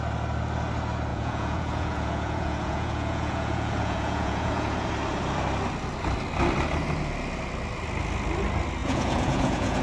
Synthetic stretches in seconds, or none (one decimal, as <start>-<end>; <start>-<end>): 1.1-4.9; 8.8-9.8